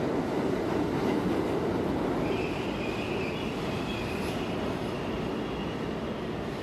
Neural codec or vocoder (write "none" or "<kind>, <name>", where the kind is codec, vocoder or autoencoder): none